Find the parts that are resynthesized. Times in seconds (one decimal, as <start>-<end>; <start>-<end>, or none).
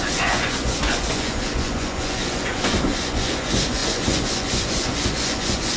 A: 0.0-5.8